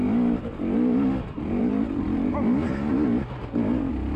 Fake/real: real